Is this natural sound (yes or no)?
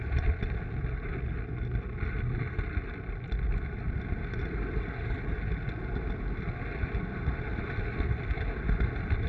yes